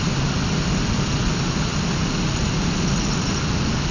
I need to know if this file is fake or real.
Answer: real